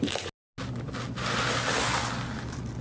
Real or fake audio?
real